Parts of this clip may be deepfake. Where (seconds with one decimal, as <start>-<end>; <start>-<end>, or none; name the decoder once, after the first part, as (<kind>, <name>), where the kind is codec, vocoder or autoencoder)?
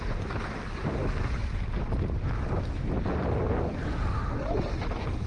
none